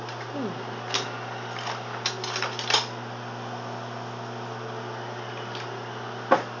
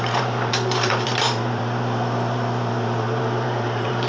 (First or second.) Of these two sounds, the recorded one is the first